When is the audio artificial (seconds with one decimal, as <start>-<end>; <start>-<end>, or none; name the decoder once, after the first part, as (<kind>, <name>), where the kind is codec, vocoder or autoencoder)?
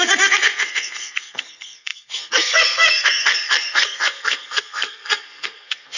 0.0-6.0 (codec, SNAC)